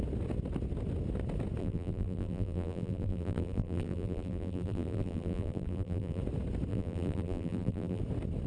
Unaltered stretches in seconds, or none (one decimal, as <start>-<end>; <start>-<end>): 0.0-1.6; 6.2-6.7; 8.0-8.5

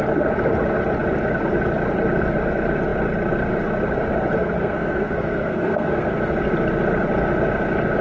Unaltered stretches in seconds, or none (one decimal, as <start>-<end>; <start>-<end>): 0.0-4.4; 6.1-8.0

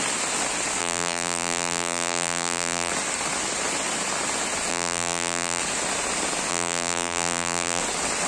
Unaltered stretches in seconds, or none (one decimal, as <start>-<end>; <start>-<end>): 0.0-0.8; 2.9-4.7; 5.6-6.5; 7.8-8.3

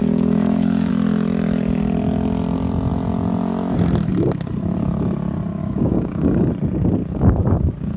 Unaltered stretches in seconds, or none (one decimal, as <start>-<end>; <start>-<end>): 0.9-5.6; 6.5-7.0

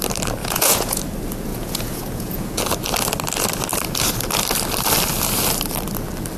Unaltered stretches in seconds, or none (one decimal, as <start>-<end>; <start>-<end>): 0.0-0.4; 1.0-1.5; 2.6-6.4